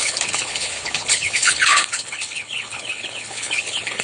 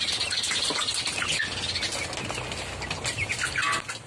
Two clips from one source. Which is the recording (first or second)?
second